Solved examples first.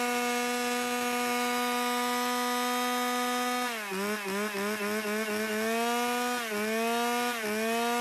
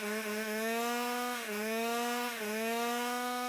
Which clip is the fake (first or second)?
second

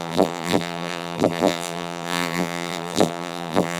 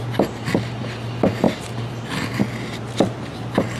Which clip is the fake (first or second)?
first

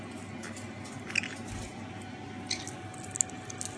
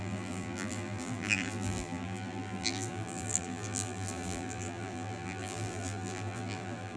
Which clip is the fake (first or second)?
second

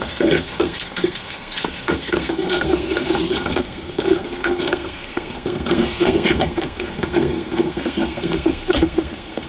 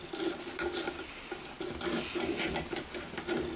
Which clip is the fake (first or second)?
first